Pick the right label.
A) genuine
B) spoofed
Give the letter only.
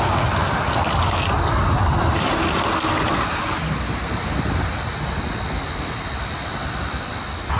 A